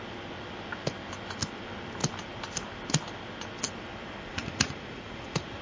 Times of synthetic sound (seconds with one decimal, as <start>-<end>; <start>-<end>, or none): 4.3-5.6